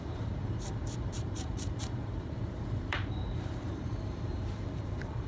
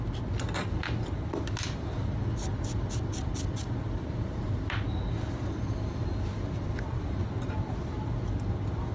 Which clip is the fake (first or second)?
first